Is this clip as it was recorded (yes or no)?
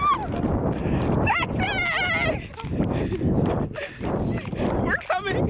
yes